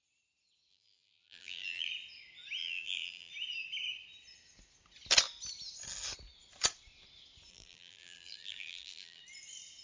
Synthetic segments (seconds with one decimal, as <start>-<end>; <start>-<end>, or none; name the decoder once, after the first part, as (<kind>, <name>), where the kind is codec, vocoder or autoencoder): 0.7-1.9 (vocoder, BigVGAN v2); 2.6-3.3; 7.5-9.2